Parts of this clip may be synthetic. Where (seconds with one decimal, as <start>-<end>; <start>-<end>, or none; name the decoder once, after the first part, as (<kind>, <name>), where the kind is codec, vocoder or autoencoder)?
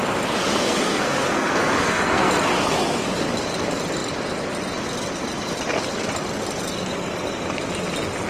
0.6-2.3 (codec, SNAC)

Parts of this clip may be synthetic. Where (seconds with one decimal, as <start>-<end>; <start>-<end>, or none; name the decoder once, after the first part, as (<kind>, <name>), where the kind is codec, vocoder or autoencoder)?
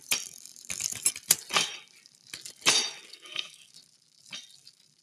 3.1-3.7 (codec, SNAC)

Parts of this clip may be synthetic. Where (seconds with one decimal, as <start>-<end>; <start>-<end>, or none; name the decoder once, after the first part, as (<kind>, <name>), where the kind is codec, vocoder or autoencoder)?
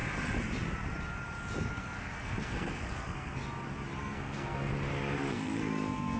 1.7-3.4 (codec, SNAC); 4.0-4.7; 5.3-6.2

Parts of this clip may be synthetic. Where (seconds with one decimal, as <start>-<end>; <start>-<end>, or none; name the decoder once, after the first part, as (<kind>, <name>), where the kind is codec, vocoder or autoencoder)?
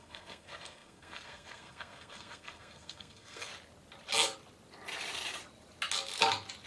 0.0-3.5 (codec, SNAC)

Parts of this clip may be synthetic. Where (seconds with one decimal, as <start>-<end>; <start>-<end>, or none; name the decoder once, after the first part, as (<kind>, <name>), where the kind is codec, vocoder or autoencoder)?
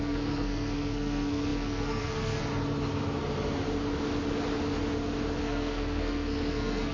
0.0-2.5 (codec, SNAC); 5.4-6.9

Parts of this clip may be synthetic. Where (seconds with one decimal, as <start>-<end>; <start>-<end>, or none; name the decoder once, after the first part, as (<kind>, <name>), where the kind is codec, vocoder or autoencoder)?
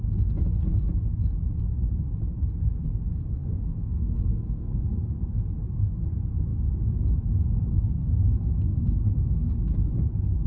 3.4-4.8 (codec, SNAC); 7.7-9.5